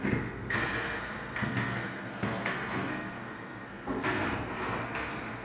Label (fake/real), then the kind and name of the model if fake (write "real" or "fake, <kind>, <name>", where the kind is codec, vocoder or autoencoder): fake, codec, SNAC